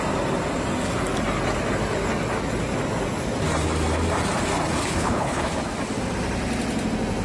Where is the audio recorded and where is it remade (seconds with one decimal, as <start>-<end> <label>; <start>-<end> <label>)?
0.0-4.8 recorded; 4.8-5.4 remade; 5.4-7.2 recorded